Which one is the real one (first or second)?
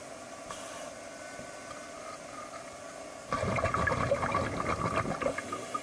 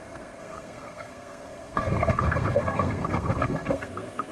first